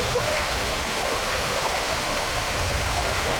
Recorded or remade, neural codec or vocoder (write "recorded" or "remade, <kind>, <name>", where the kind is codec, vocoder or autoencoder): remade, autoencoder, DAC-VAE